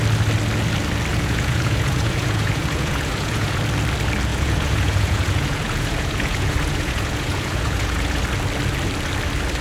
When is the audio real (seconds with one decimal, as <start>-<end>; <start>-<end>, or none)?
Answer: 0.0-1.1; 3.6-4.3; 8.2-9.6